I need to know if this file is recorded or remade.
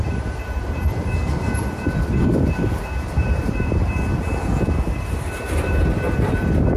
remade